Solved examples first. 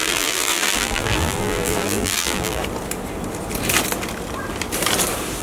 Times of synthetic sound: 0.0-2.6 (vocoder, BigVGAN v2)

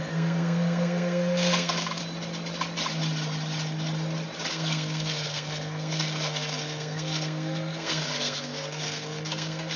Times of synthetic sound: 0.0-2.0 (codec, SNAC); 4.5-9.8

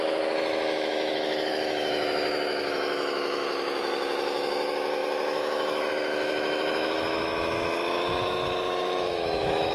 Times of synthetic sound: 0.0-9.7 (autoencoder, DAC-VAE)

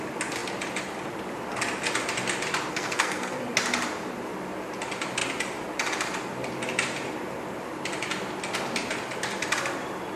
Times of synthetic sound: 2.7-3.4 (codec, SNAC)